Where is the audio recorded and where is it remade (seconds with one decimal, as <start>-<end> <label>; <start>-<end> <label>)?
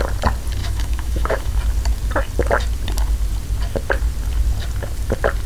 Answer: 0.0-0.6 recorded; 0.6-1.6 remade; 1.6-5.5 recorded